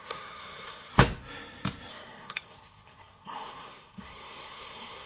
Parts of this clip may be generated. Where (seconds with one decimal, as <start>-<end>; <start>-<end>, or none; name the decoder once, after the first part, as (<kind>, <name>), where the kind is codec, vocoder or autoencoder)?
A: 0.0-0.9 (codec, SNAC); 1.9-5.1